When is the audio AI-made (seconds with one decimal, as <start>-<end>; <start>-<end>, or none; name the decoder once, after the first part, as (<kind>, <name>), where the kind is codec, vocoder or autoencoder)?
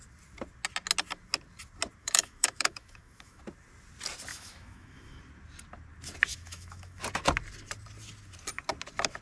2.0-3.4 (autoencoder, DAC-VAE); 4.3-5.2; 6.3-7.0